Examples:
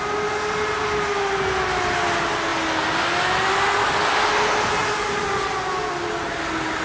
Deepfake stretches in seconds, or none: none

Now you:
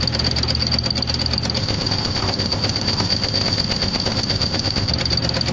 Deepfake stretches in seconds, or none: 1.6-4.9

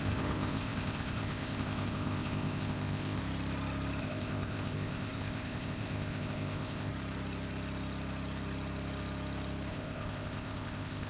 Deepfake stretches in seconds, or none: 0.0-3.2; 4.0-6.9; 9.7-11.1

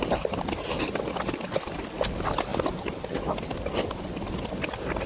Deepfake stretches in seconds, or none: none

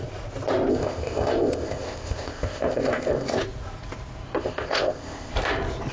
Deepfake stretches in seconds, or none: 0.7-3.4; 4.4-5.3

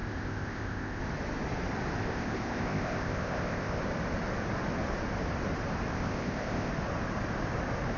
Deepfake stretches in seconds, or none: 0.0-1.0; 2.0-3.8; 5.9-6.7

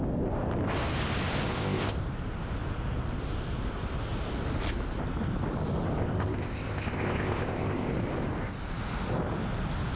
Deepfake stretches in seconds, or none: 1.5-2.0; 6.0-7.9